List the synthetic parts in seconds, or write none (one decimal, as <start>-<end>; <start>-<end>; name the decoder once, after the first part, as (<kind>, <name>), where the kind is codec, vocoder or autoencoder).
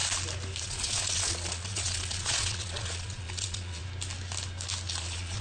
0.6-3.8 (vocoder, Vocos); 4.9-5.4